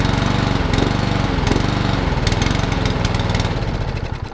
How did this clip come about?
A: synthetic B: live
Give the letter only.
B